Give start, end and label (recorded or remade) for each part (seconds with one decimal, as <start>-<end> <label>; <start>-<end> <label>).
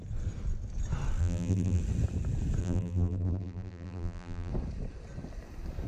0.0-1.2 recorded; 1.2-1.8 remade; 1.8-2.6 recorded; 2.6-4.5 remade; 4.5-5.9 recorded